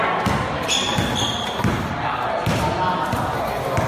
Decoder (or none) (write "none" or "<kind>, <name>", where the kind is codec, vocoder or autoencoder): none